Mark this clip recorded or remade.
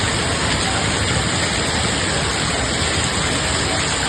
recorded